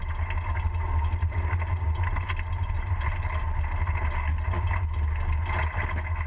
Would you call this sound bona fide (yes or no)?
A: yes